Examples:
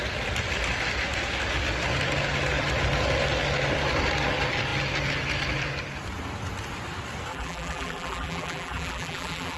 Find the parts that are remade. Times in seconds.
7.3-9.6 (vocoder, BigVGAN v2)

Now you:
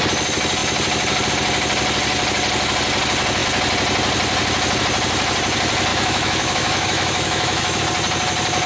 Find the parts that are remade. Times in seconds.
5.9-7.8 (autoencoder, DAC-VAE)